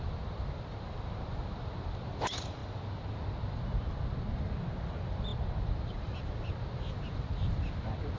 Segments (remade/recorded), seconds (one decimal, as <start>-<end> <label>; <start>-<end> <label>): 0.0-2.6 remade; 2.6-3.5 recorded; 3.5-5.3 remade; 5.3-5.9 recorded; 5.9-8.2 remade